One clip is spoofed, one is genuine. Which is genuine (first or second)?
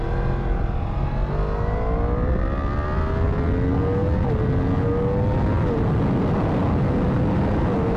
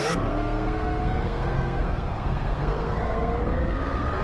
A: first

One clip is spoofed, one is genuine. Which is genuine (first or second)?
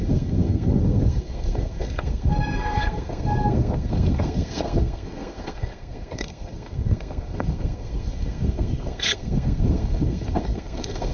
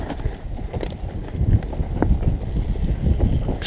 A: second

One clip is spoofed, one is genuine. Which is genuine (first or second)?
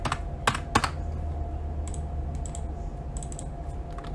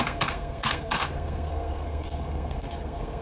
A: first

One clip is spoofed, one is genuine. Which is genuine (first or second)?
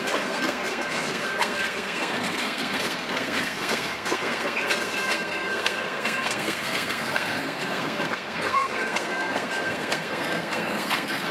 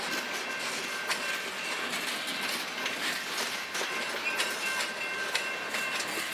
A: second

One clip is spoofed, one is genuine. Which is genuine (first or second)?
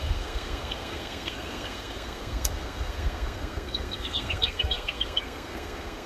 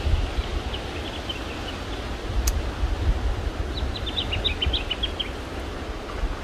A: second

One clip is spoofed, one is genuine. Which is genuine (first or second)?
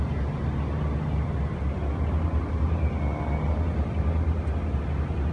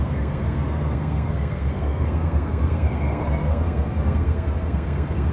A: first